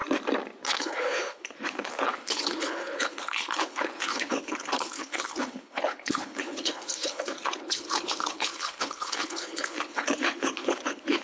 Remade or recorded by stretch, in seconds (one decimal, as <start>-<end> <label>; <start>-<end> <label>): 0.0-0.7 recorded; 0.7-11.2 remade